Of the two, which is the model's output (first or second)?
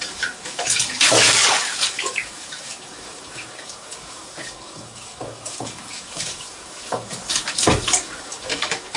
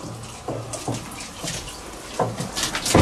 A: first